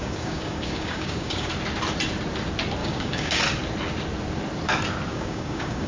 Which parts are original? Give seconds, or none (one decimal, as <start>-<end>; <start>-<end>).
1.5-2.8; 3.4-5.1